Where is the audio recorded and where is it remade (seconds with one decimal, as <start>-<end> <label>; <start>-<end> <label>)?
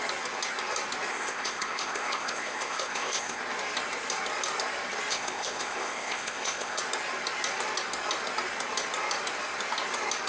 0.0-1.1 recorded; 1.1-3.4 remade; 3.4-5.1 recorded; 5.1-6.8 remade; 6.8-10.3 recorded